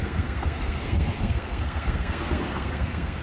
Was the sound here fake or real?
fake